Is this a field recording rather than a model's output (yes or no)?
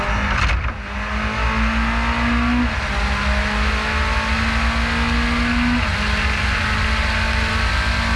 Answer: yes